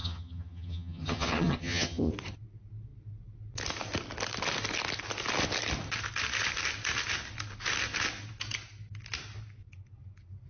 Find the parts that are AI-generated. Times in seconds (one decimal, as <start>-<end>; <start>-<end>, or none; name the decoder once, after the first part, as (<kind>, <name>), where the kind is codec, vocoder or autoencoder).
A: 0.0-2.1 (vocoder, HiFi-GAN)